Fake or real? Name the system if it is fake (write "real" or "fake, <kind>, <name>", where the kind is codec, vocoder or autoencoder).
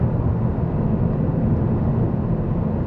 real